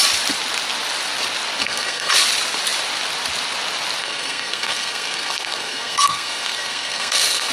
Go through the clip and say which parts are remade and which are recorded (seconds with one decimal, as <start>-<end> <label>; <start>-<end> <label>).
0.0-1.6 recorded; 1.6-2.1 remade; 2.1-4.0 recorded; 4.0-7.5 remade